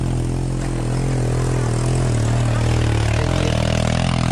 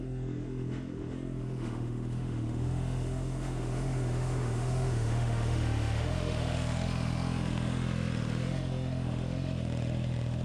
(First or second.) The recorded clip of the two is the first